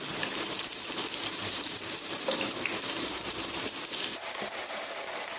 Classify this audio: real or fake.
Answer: fake